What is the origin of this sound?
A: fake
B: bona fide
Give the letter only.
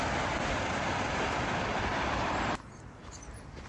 A